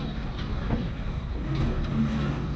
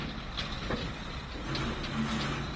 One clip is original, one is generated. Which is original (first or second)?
second